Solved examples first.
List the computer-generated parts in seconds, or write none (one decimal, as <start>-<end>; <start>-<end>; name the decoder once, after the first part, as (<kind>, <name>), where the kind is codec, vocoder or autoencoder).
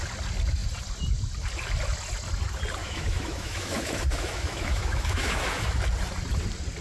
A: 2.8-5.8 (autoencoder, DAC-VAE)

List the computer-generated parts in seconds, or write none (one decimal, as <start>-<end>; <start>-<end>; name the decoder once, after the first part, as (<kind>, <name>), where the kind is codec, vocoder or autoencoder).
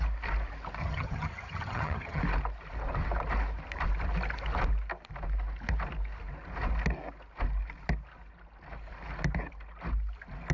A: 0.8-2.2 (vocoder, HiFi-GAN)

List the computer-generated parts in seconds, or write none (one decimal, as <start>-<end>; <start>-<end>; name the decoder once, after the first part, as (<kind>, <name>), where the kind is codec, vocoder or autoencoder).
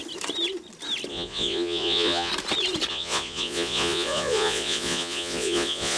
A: 1.1-2.3 (vocoder, Vocos); 2.9-6.0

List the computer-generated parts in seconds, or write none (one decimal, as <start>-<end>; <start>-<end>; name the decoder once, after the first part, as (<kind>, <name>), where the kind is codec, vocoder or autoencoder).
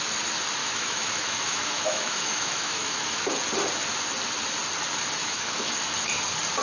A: 0.6-3.3 (autoencoder, DAC-VAE); 5.2-5.7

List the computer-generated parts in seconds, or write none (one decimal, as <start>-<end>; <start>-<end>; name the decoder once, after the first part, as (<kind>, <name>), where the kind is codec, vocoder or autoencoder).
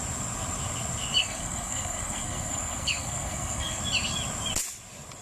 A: 1.2-3.8 (codec, SNAC)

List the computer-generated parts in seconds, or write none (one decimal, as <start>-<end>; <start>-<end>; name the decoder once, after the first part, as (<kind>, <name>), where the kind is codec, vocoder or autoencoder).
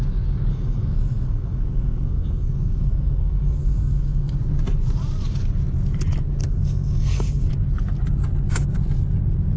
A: 0.5-4.3 (codec, SNAC); 6.4-7.5